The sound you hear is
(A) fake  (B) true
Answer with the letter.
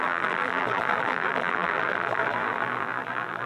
A